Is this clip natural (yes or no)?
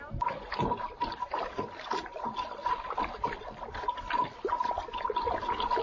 yes